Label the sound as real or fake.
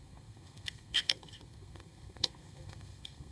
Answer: fake